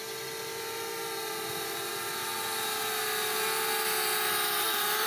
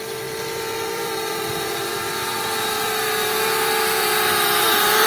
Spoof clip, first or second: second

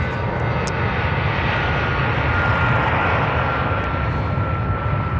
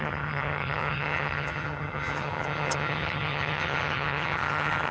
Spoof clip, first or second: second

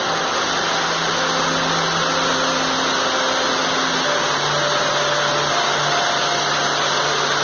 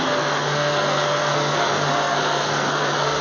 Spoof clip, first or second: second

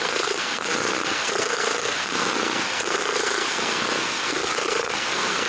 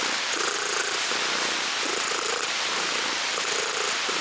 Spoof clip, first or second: first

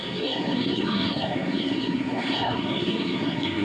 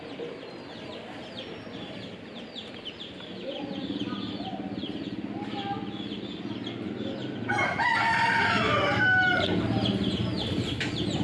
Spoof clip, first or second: first